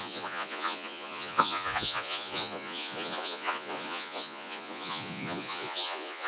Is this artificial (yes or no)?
yes